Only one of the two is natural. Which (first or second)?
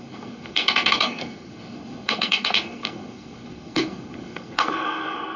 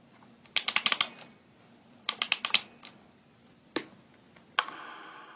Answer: second